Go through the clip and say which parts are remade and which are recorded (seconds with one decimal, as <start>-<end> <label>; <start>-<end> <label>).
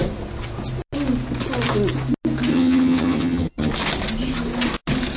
0.0-2.5 recorded; 2.5-3.7 remade; 3.7-5.2 recorded